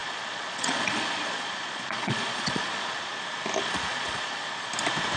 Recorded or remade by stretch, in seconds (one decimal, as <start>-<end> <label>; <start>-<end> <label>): 0.0-3.1 remade; 3.1-3.6 recorded; 3.6-4.7 remade; 4.7-5.2 recorded